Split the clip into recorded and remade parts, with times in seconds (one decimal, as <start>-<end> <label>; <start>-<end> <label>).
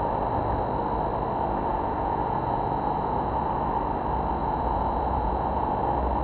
0.0-1.7 recorded; 1.7-3.5 remade; 3.5-4.4 recorded; 4.4-5.7 remade; 5.7-6.2 recorded